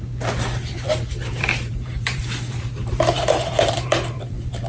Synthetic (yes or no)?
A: yes